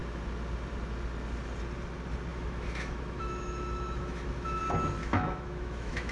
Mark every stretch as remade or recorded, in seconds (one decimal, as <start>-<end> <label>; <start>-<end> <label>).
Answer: 0.0-2.3 recorded; 2.3-4.6 remade; 4.6-5.0 recorded; 5.0-6.1 remade